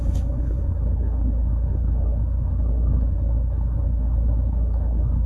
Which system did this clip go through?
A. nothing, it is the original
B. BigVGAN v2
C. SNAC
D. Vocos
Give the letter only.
C